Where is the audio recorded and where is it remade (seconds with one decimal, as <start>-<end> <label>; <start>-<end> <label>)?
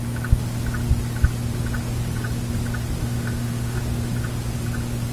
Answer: 0.0-3.0 recorded; 3.0-3.8 remade; 3.8-5.1 recorded